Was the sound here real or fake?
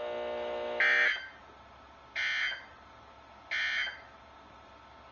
real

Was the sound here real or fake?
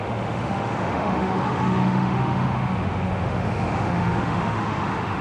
fake